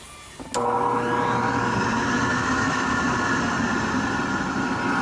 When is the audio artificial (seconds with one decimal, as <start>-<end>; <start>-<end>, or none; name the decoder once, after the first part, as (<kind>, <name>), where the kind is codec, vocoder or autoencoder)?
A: 2.3-3.0 (autoencoder, DAC-VAE)